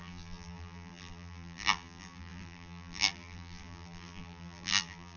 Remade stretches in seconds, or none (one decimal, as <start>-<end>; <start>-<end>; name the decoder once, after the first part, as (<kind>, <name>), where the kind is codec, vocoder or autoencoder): 0.0-5.2 (vocoder, BigVGAN v2)

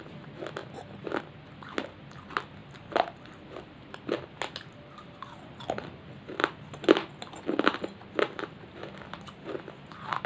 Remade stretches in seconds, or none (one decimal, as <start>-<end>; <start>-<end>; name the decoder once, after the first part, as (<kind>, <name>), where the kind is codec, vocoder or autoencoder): none

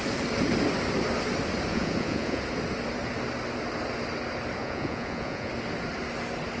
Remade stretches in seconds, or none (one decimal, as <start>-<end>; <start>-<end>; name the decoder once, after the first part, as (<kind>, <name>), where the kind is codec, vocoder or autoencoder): 1.7-2.4 (vocoder, Vocos); 4.6-5.5